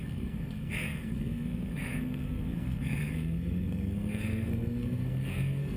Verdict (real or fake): fake